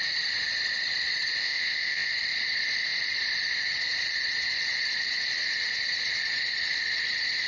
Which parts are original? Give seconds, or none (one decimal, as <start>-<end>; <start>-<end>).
0.0-1.4; 2.1-7.5